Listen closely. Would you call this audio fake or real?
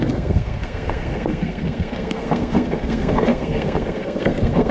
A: fake